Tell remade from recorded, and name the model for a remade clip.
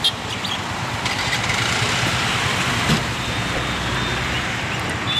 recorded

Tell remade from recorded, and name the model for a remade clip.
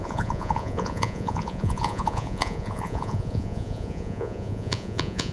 remade, vocoder, Vocos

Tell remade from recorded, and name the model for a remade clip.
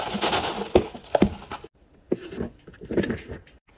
recorded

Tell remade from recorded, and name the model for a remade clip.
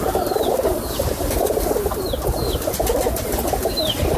recorded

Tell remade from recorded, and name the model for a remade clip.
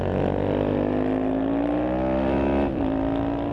recorded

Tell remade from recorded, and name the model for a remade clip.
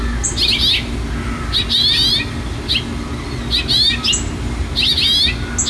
recorded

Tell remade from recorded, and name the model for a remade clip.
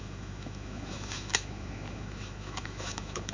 remade, autoencoder, DAC-VAE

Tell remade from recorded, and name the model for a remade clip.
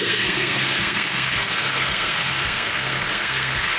remade, codec, SNAC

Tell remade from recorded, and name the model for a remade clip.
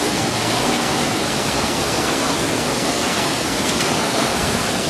remade, codec, SNAC